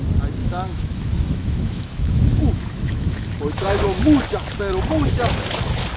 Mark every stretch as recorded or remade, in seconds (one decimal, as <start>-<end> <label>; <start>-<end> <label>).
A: 0.0-0.4 recorded; 0.4-4.0 remade; 4.0-6.0 recorded